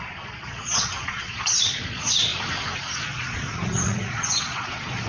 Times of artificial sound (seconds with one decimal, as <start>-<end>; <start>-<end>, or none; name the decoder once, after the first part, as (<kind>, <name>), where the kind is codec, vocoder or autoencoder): 0.0-2.3 (vocoder, Vocos); 3.0-5.1